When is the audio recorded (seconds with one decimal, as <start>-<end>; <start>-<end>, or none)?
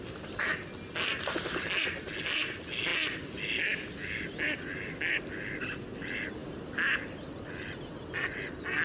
0.0-8.8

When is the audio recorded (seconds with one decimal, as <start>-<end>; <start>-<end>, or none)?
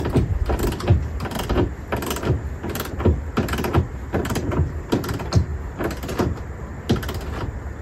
0.0-7.8